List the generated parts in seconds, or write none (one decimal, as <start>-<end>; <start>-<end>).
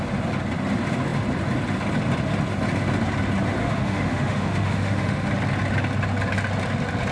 3.6-5.3